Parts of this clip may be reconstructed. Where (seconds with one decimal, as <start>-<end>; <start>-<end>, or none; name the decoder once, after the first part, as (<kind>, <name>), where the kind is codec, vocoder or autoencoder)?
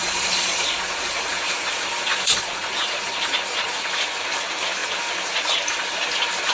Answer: 0.0-3.9 (vocoder, Vocos)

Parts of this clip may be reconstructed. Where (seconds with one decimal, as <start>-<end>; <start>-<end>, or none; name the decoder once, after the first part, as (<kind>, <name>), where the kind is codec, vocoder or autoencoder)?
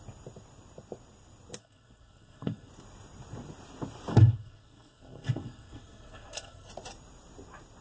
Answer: 1.6-2.7 (codec, SNAC); 4.1-6.7